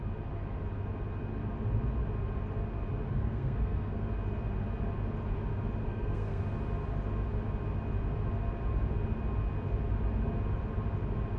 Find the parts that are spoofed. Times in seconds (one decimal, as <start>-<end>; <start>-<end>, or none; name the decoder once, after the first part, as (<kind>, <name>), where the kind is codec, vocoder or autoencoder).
3.1-4.1 (codec, SNAC); 5.8-6.4